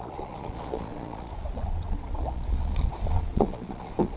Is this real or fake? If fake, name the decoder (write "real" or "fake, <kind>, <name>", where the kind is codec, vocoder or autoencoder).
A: fake, vocoder, Vocos